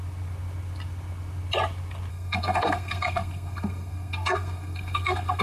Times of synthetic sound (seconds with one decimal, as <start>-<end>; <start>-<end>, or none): 2.1-5.4